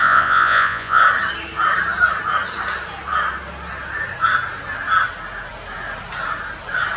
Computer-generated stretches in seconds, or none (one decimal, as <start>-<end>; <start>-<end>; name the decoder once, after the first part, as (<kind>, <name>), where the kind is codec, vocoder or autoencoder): 0.0-1.0 (vocoder, Vocos)